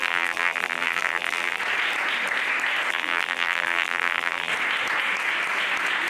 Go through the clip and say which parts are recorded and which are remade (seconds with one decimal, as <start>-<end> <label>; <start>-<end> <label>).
0.0-1.6 remade; 1.6-2.9 recorded; 2.9-4.5 remade; 4.5-6.1 recorded